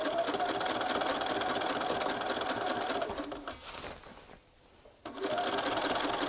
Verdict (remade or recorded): recorded